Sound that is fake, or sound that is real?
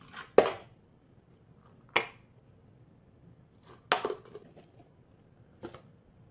real